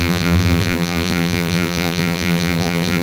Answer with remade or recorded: remade